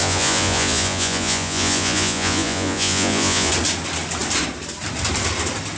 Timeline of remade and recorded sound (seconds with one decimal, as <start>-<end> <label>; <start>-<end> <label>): 0.0-3.5 remade; 3.5-5.8 recorded